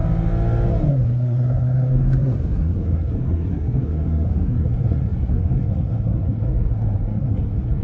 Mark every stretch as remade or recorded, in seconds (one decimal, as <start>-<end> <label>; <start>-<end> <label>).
0.0-0.9 recorded; 0.9-7.8 remade